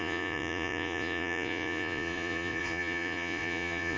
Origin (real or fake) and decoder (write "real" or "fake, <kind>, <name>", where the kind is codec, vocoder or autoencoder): fake, vocoder, Vocos